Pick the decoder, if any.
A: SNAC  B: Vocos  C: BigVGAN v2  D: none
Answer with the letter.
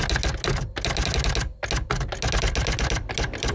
D